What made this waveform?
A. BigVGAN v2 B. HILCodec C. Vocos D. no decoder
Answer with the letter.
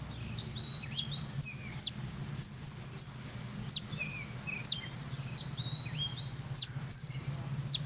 D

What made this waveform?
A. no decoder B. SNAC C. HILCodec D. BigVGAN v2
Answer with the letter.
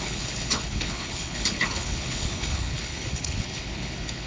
C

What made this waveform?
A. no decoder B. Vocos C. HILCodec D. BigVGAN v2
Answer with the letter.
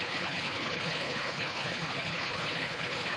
C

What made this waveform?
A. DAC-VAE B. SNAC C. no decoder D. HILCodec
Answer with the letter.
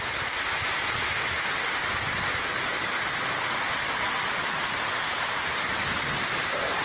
C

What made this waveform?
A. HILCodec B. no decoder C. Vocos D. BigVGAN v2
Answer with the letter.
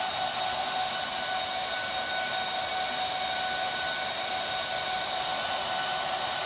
B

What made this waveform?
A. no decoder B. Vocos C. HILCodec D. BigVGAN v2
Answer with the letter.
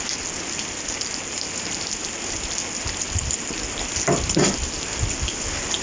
A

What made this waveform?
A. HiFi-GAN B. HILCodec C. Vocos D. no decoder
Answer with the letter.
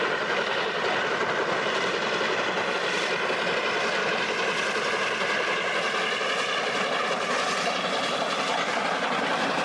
D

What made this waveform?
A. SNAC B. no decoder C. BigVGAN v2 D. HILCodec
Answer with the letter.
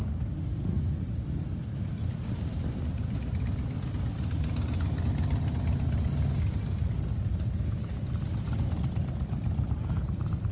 B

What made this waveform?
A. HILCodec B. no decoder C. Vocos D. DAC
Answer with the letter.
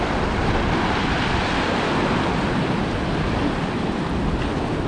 B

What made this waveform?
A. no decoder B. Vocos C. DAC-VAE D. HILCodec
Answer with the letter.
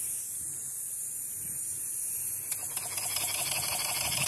A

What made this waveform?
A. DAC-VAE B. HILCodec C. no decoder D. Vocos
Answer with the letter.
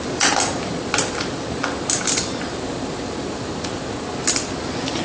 C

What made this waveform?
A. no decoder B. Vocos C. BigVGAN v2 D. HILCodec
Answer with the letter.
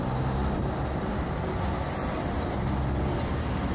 A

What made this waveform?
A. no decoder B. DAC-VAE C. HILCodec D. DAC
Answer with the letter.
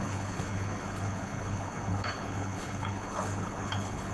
C